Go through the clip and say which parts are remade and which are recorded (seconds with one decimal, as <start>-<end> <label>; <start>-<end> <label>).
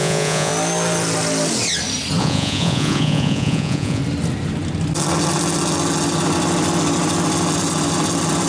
0.0-0.5 remade; 0.5-2.2 recorded; 2.2-4.0 remade; 4.0-8.5 recorded